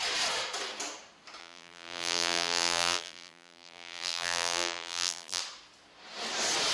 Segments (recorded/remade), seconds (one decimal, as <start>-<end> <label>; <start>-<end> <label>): 0.0-1.4 recorded; 1.4-5.4 remade; 5.4-6.7 recorded